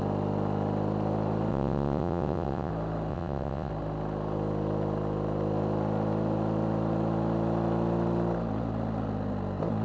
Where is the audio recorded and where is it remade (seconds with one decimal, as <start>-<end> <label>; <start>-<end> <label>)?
0.0-1.5 recorded; 1.5-2.7 remade; 2.7-3.1 recorded; 3.1-3.7 remade; 3.7-9.8 recorded